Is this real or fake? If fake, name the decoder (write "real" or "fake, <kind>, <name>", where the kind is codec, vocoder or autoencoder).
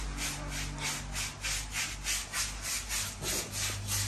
real